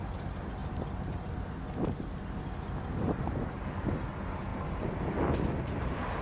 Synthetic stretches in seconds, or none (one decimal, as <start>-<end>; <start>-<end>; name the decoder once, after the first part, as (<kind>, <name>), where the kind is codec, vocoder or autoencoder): 0.6-1.5 (vocoder, BigVGAN v2)